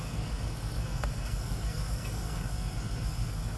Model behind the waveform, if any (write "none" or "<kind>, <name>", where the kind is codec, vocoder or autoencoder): codec, SNAC